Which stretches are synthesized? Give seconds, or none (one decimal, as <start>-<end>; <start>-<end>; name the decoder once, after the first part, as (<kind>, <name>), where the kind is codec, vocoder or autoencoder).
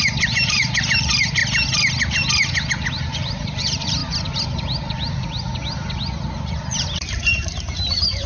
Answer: 0.0-1.4 (vocoder, BigVGAN v2); 3.0-4.0; 6.3-8.3